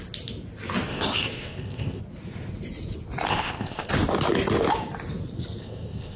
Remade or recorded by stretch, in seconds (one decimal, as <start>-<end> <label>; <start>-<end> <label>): 0.0-0.9 recorded; 0.9-2.0 remade; 2.0-3.3 recorded; 3.3-3.9 remade; 3.9-5.6 recorded; 5.6-6.2 remade